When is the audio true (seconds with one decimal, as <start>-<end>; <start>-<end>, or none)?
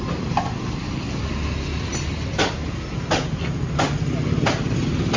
0.0-5.2